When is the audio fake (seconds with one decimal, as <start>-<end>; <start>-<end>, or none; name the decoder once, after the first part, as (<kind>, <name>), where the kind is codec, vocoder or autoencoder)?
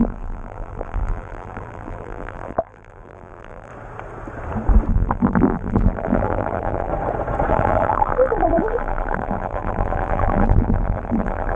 0.0-3.7 (vocoder, BigVGAN v2); 4.9-6.9; 7.5-11.6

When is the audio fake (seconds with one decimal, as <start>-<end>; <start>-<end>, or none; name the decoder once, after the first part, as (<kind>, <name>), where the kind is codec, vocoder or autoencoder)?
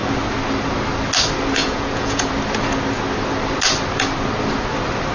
1.6-2.3 (vocoder, Vocos)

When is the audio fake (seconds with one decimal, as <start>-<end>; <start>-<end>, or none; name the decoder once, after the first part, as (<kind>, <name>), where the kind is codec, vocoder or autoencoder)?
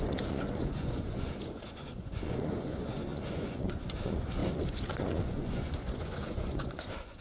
0.0-7.2 (vocoder, Vocos)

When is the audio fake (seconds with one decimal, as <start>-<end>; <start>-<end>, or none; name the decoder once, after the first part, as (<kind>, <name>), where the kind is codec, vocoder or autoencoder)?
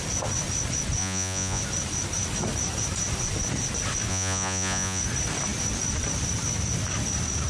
1.0-1.6 (vocoder, Vocos); 4.1-5.0